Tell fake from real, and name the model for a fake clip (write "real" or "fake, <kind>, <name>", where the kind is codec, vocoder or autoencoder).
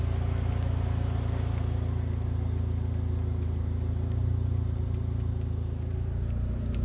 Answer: real